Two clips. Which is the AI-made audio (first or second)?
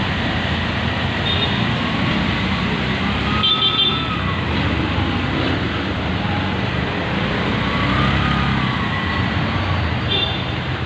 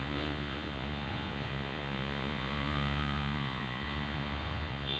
second